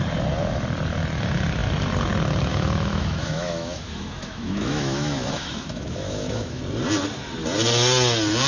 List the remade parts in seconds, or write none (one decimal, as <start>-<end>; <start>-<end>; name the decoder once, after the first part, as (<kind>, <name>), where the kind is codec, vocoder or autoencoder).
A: 2.5-6.6 (autoencoder, DAC-VAE)